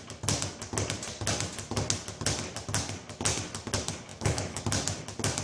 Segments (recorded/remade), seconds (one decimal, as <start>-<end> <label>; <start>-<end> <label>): 0.0-4.1 recorded; 4.1-4.6 remade; 4.6-5.4 recorded